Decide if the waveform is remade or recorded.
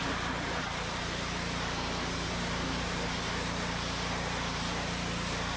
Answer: remade